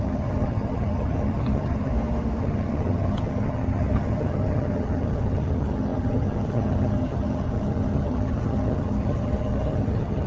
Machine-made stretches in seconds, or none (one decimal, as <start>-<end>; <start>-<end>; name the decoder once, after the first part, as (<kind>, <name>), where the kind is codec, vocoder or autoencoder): 0.0-1.9 (vocoder, HiFi-GAN); 2.4-10.3